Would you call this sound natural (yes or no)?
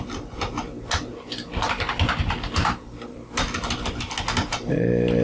yes